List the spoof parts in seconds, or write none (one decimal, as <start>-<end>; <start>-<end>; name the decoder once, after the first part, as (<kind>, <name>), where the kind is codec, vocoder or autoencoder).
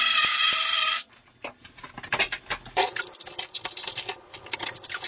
none